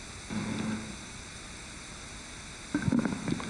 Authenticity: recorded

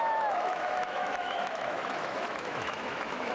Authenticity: remade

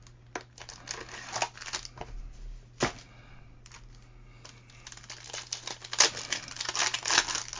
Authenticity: recorded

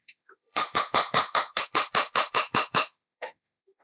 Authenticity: remade